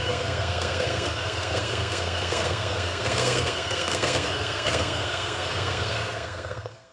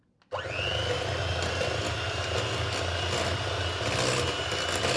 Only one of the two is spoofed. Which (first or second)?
first